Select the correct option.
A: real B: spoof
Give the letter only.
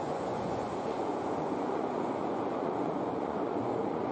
B